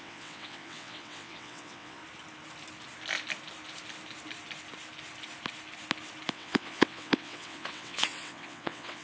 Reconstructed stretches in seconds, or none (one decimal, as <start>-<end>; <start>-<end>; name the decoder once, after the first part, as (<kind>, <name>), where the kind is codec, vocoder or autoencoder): 0.0-2.0 (vocoder, WaveNeXt); 6.3-9.0